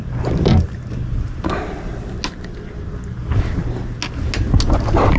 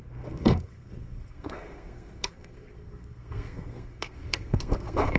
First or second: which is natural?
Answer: first